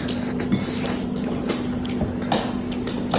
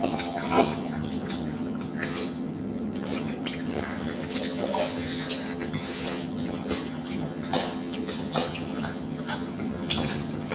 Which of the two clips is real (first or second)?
first